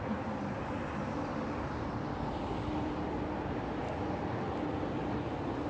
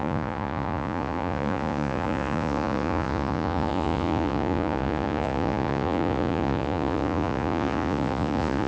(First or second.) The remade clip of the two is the second